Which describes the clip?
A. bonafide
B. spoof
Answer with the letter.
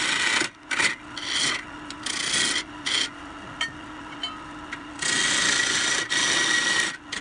A